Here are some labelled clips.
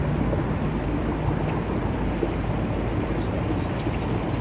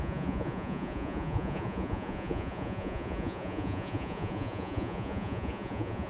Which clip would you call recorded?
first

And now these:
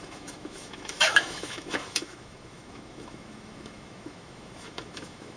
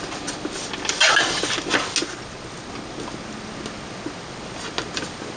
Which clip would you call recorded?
second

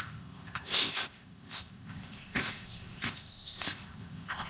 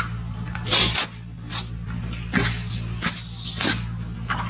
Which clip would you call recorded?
second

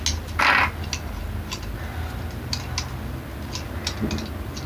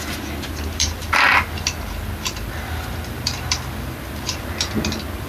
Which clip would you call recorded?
first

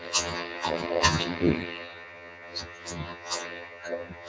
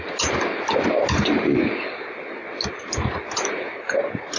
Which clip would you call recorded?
second